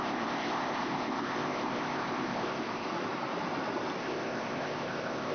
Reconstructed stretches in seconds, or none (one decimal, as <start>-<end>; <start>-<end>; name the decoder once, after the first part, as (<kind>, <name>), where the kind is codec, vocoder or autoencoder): 0.0-2.9 (codec, ZipCodec); 4.0-5.3